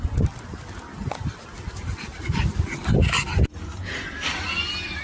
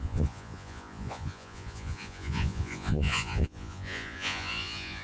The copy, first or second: second